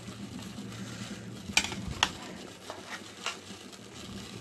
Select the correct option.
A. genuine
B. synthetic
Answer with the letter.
A